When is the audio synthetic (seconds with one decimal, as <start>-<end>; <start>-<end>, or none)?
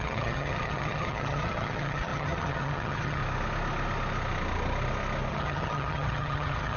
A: 0.0-3.2; 5.3-6.8